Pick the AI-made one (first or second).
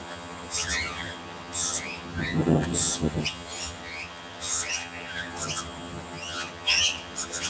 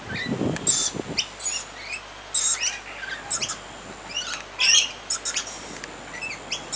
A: first